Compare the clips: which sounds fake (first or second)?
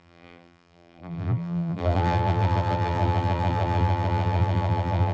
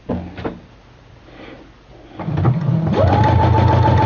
first